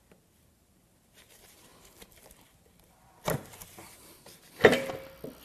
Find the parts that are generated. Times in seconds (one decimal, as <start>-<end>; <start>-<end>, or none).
1.7-4.9